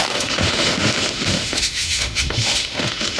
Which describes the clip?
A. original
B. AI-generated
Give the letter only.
B